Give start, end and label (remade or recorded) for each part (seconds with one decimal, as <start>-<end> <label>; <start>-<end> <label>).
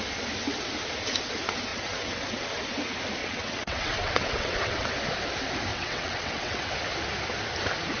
0.0-1.7 recorded; 1.7-2.6 remade; 2.6-3.2 recorded; 3.2-4.9 remade; 4.9-5.7 recorded; 5.7-6.7 remade; 6.7-8.0 recorded